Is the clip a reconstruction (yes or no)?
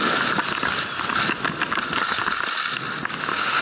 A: no